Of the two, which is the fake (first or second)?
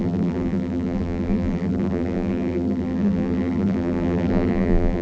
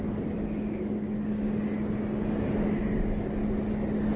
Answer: first